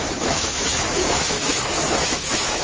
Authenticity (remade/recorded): remade